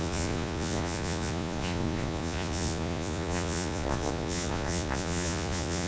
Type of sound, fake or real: fake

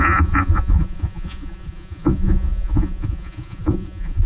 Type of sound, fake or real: fake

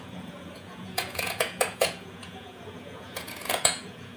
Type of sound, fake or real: fake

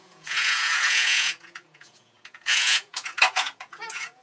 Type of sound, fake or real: fake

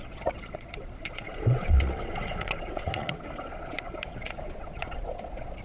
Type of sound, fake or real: fake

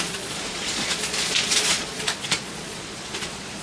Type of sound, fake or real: fake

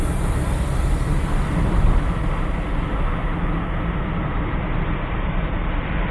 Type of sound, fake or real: real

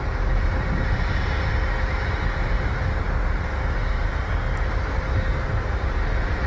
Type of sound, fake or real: real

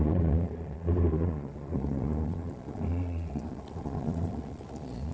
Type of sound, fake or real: fake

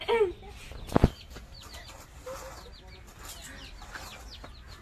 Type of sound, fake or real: real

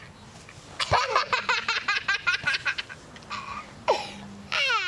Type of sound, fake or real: real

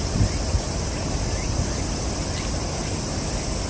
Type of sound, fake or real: real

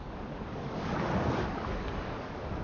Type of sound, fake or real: fake